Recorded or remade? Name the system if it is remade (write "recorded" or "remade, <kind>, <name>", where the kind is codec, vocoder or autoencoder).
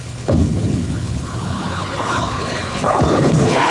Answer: remade, codec, HILCodec